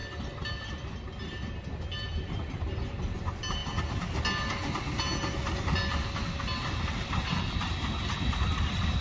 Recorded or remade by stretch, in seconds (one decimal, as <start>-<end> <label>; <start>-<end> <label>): 0.0-9.0 recorded